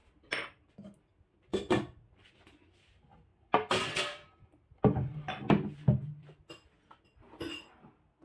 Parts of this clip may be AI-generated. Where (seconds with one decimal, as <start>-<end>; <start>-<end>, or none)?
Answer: none